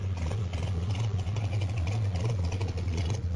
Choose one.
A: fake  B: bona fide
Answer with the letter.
A